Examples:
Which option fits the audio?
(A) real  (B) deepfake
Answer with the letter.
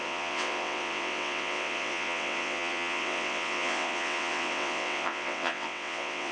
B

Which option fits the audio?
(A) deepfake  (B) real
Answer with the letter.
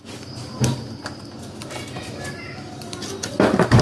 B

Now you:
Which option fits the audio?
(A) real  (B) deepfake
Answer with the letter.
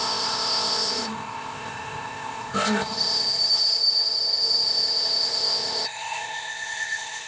B